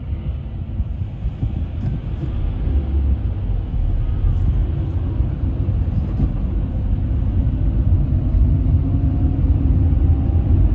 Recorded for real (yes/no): yes